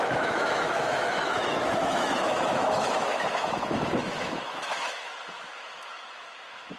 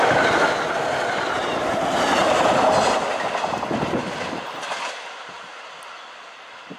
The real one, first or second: second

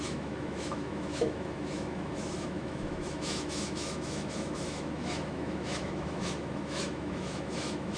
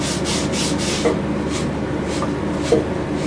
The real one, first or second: second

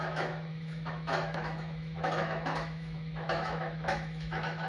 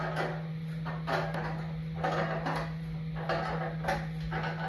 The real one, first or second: second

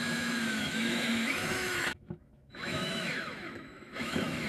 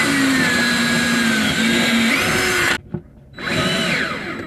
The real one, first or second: second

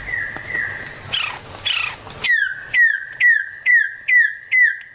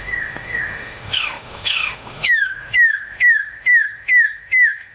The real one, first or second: first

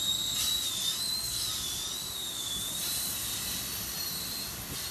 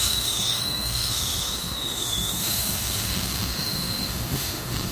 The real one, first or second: first